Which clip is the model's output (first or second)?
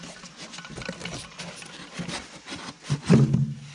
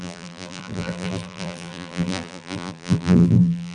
second